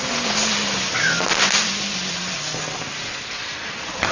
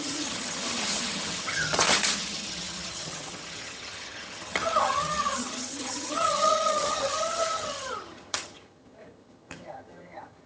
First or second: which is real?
first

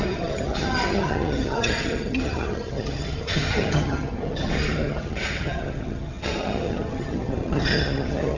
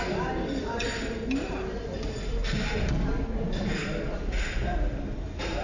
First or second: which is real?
second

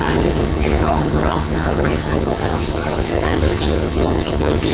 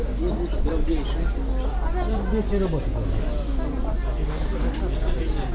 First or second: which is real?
second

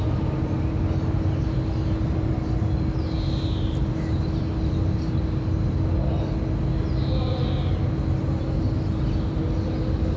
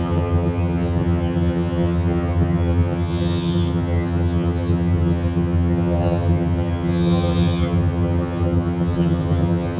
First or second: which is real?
first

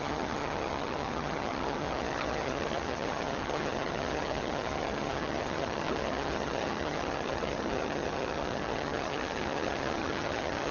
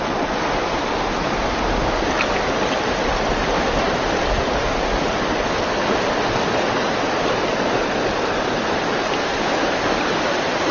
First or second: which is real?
second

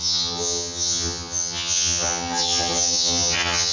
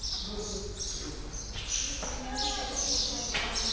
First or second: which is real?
second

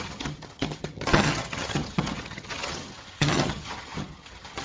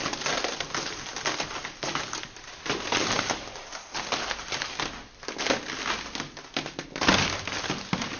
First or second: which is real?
second